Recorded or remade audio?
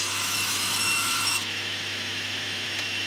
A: remade